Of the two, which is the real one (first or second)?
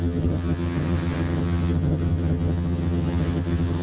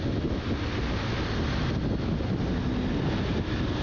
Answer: second